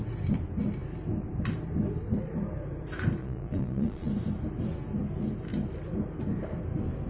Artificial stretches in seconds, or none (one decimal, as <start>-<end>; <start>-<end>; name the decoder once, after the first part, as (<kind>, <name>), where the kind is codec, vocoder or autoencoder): 3.2-4.1 (vocoder, Vocos)